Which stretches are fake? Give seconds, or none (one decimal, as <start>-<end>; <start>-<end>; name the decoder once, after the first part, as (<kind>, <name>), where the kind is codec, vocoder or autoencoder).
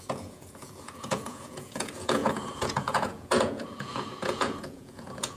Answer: 0.0-5.4 (vocoder, Vocos)